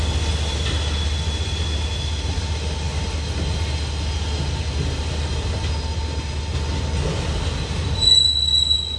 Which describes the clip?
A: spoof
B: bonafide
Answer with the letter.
B